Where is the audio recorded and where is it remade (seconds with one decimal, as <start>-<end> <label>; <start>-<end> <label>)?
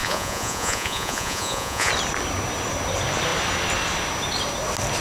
0.0-1.9 remade; 1.9-5.0 recorded